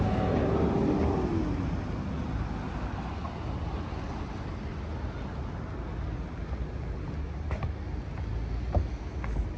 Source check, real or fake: real